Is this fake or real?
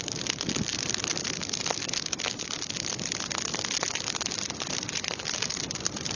real